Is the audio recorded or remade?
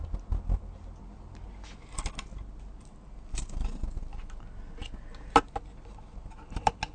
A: recorded